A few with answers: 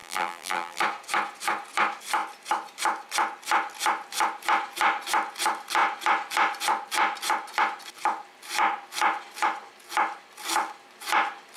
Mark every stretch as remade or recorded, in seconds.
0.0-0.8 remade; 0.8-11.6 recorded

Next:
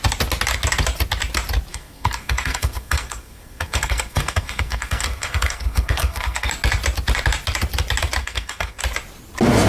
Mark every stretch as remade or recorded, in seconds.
0.0-1.7 recorded; 1.7-6.5 remade; 6.5-8.2 recorded; 8.2-8.8 remade; 8.8-9.7 recorded

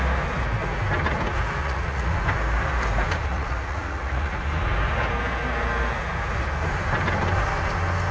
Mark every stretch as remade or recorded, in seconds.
0.0-1.6 recorded; 1.6-2.1 remade; 2.1-3.3 recorded; 3.3-4.4 remade; 4.4-8.1 recorded

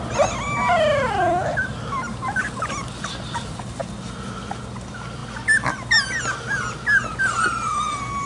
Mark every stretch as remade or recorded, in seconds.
0.0-8.3 recorded

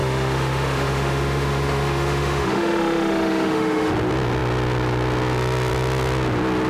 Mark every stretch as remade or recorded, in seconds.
0.0-3.9 remade; 3.9-6.7 recorded

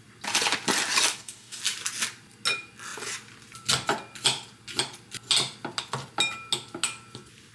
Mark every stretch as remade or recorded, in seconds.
0.0-1.1 recorded; 1.1-1.6 remade; 1.6-7.5 recorded

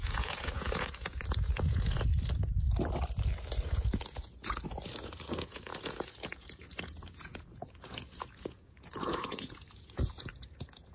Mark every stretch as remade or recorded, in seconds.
0.0-2.1 remade; 2.1-3.7 recorded; 3.7-10.9 remade

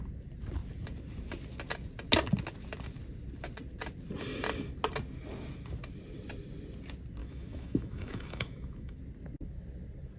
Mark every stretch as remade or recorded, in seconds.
0.0-7.2 recorded; 7.2-9.0 remade; 9.0-10.2 recorded